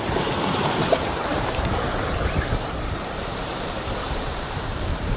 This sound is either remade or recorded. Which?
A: remade